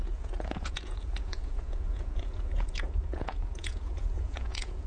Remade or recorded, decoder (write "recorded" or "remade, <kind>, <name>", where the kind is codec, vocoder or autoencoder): remade, vocoder, Vocos